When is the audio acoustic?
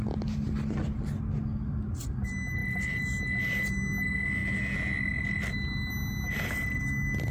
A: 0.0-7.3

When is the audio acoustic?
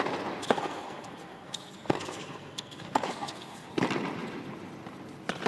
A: 0.0-0.4; 3.7-5.5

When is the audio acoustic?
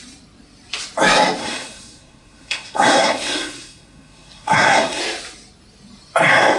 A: 0.0-1.4; 5.0-6.6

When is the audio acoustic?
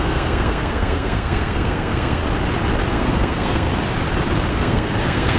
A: 2.2-2.9; 3.7-4.5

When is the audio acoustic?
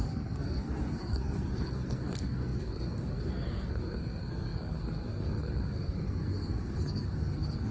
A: none